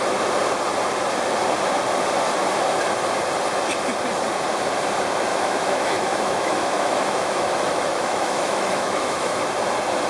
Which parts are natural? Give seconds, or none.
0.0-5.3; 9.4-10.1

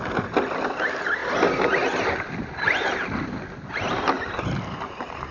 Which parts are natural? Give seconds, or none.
0.0-5.3

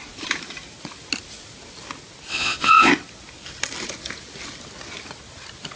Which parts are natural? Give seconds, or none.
0.0-2.3; 2.9-5.8

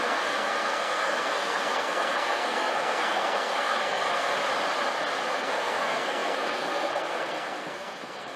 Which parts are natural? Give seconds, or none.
4.3-5.3

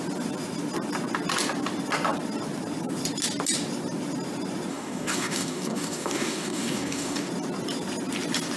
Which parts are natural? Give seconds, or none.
0.0-4.7; 7.3-8.6

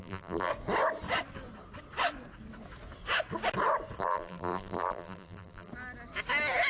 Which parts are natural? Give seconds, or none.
0.5-4.0; 5.7-6.7